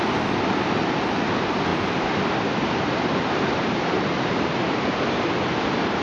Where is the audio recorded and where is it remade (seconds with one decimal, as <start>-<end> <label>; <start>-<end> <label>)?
0.0-1.7 recorded; 1.7-5.3 remade; 5.3-6.0 recorded